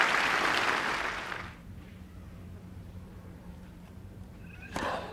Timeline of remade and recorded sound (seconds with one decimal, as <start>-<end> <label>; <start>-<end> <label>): 0.0-1.6 recorded; 1.6-5.1 remade